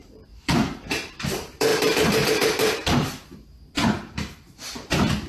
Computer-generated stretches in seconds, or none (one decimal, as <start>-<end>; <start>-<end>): 0.0-5.3